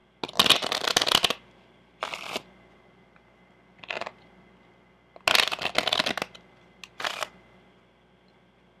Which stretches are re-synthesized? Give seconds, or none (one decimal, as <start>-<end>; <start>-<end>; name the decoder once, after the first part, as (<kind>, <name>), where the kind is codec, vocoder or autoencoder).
none